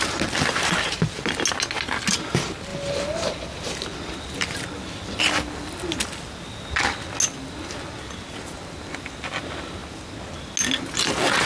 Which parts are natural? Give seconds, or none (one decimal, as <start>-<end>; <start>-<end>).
0.0-2.7; 6.8-11.5